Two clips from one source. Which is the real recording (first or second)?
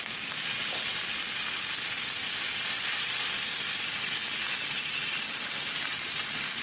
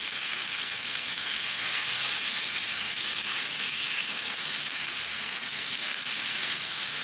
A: first